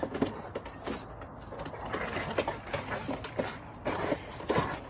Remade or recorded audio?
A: recorded